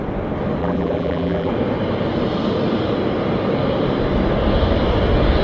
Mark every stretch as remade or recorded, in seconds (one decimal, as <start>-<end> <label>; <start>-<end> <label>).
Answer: 0.0-0.6 recorded; 0.6-1.5 remade; 1.5-5.4 recorded